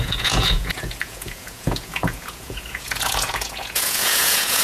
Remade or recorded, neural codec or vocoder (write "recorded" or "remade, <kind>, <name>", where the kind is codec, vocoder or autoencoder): remade, vocoder, Vocos